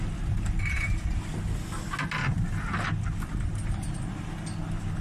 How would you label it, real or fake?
real